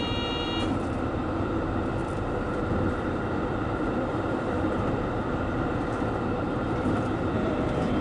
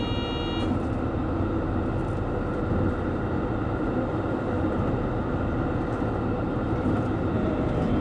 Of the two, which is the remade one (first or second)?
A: first